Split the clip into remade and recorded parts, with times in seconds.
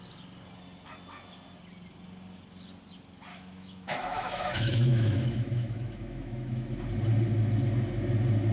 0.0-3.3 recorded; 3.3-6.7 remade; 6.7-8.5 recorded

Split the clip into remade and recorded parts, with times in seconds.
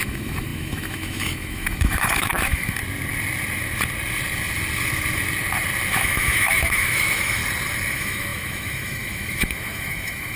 0.0-2.8 remade; 2.8-5.9 recorded; 5.9-7.4 remade; 7.4-7.9 recorded; 7.9-10.4 remade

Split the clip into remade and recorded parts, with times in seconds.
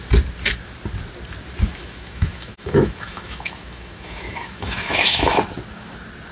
0.0-1.8 recorded; 1.8-5.4 remade; 5.4-6.3 recorded